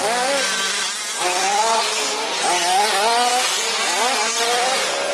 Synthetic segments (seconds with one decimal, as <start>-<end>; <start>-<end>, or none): 1.6-3.3